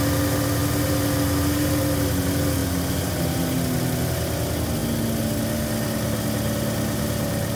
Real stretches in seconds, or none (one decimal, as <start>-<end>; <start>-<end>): 0.0-7.6